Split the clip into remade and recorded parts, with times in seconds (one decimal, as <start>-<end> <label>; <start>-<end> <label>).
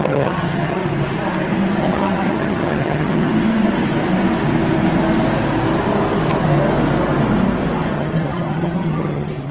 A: 0.0-0.8 remade; 0.8-1.8 recorded; 1.8-3.3 remade; 3.3-7.9 recorded; 7.9-9.5 remade